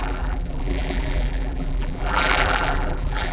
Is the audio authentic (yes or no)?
no